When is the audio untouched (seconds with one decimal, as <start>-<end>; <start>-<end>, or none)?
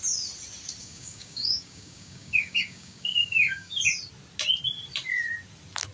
0.0-0.8; 3.8-5.9